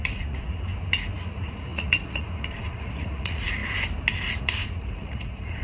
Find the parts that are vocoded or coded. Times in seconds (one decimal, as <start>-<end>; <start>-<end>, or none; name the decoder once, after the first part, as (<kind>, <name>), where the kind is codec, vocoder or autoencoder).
0.0-0.7 (vocoder, Vocos); 1.2-3.6; 4.4-5.6